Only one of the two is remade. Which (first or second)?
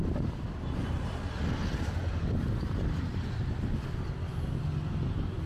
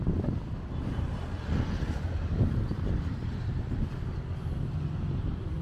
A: second